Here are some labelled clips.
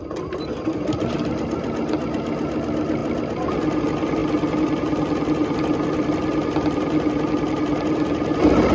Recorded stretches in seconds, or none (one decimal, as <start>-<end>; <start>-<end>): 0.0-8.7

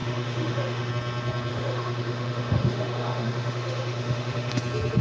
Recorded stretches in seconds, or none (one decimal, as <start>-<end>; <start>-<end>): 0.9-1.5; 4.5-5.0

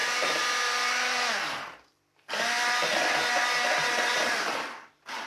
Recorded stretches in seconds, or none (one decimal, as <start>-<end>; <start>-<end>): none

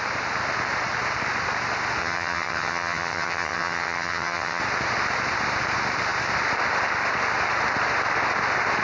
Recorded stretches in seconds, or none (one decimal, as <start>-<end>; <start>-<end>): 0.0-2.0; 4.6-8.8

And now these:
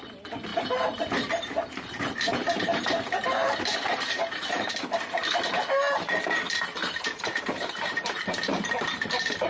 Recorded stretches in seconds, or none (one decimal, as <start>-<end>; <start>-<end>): 0.0-0.5; 4.7-6.8

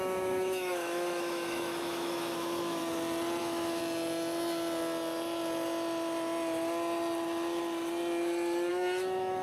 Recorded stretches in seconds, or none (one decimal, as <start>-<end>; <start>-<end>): 2.8-3.4; 3.8-8.7

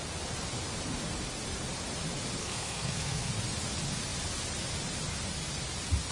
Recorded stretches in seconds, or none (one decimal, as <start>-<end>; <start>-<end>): 0.0-2.4; 3.3-6.1